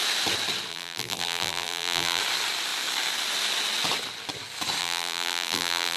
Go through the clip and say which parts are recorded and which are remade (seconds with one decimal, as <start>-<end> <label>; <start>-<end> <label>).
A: 0.0-0.7 recorded; 0.7-2.2 remade; 2.2-4.8 recorded; 4.8-6.0 remade